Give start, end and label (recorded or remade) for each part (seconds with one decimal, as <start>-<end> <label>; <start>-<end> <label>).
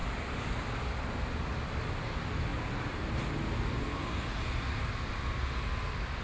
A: 0.0-6.2 recorded